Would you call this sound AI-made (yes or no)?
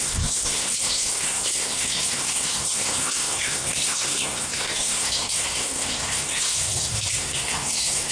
yes